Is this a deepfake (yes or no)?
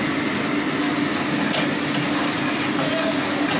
no